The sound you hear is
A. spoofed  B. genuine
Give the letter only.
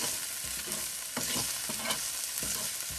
B